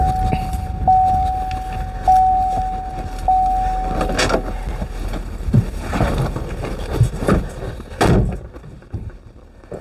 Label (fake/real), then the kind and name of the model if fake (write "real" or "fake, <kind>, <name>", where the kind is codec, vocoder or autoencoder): real